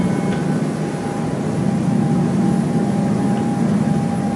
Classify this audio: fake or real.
real